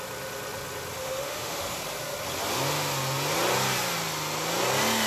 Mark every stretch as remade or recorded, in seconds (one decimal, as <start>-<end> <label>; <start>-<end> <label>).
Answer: 0.0-1.0 recorded; 1.0-1.6 remade; 1.6-5.1 recorded

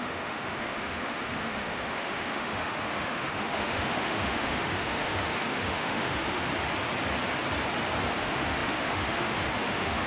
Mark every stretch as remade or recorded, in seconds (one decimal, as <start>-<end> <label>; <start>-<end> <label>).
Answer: 0.0-6.5 remade; 6.5-8.2 recorded; 8.2-10.1 remade

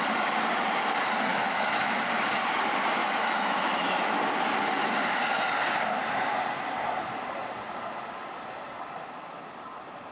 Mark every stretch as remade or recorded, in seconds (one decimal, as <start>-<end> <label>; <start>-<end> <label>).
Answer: 0.0-1.3 recorded; 1.3-1.9 remade; 1.9-3.0 recorded; 3.0-4.0 remade; 4.0-10.1 recorded

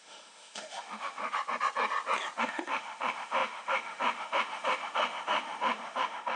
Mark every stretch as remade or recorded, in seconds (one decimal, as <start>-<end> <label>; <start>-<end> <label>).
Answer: 0.0-1.2 remade; 1.2-2.4 recorded; 2.4-6.4 remade

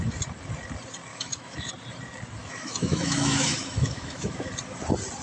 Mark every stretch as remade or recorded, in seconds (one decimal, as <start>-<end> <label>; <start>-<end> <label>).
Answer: 0.0-1.1 recorded; 1.1-1.7 remade; 1.7-2.4 recorded; 2.4-4.5 remade; 4.5-5.2 recorded